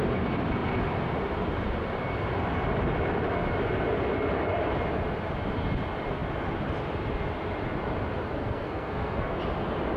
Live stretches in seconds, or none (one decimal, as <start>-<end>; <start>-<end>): 0.0-8.4; 9.4-10.0